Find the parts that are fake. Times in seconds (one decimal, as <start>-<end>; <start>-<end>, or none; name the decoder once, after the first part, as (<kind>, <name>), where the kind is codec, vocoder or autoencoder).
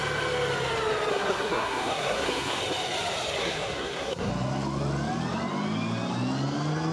1.1-2.6 (codec, SNAC); 3.4-4.3